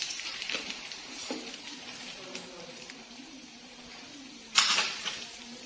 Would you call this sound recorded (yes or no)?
no